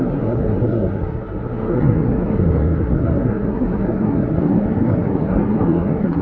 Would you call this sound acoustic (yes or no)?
no